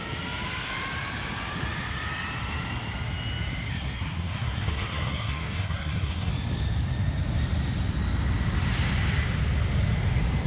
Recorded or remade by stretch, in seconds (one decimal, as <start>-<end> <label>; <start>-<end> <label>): 0.0-3.7 recorded; 3.7-6.3 remade; 6.3-10.5 recorded